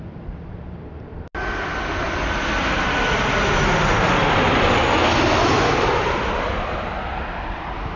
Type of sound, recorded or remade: recorded